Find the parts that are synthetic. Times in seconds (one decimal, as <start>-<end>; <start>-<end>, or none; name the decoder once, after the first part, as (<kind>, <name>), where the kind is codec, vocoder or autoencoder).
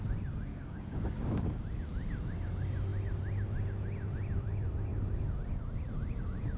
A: 0.5-1.6 (codec, DAC)